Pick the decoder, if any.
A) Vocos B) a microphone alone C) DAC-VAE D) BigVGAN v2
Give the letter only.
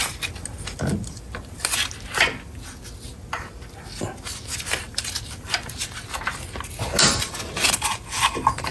B